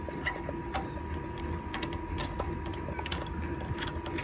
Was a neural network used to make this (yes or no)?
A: no